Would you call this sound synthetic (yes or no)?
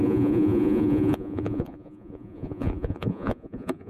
yes